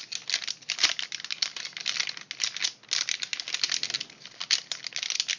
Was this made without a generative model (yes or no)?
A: yes